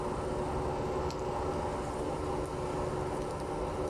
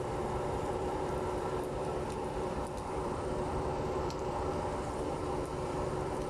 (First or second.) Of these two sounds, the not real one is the second